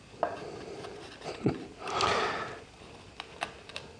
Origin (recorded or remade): recorded